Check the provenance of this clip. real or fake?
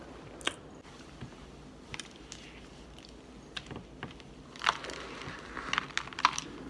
real